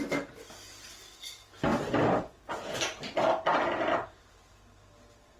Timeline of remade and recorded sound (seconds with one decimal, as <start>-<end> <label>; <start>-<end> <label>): 0.0-5.4 recorded